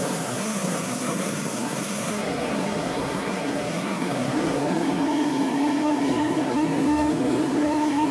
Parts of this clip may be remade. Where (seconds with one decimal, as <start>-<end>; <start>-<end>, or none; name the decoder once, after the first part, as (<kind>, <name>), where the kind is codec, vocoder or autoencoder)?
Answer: 0.0-8.1 (codec, SNAC)